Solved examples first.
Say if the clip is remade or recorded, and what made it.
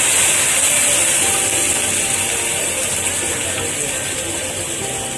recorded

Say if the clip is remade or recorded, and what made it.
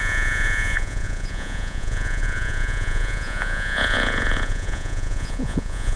remade, vocoder, Vocos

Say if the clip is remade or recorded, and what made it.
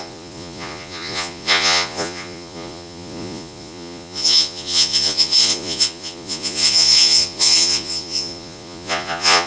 remade, vocoder, Vocos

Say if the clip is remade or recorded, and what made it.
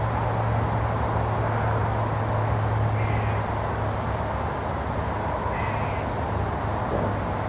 recorded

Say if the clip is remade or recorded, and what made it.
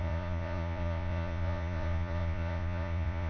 remade, vocoder, Vocos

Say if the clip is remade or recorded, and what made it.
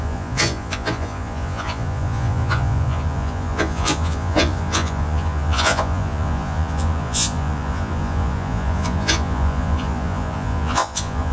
remade, vocoder, Vocos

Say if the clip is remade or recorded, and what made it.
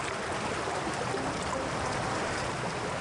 recorded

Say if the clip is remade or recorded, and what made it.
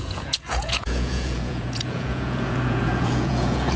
remade, vocoder, Vocos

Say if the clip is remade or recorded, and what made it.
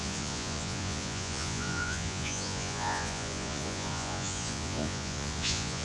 remade, vocoder, Vocos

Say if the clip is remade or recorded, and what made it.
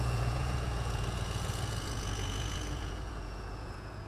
remade, vocoder, Vocos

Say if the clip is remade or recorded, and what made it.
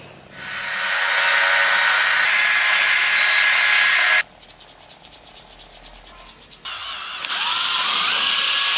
recorded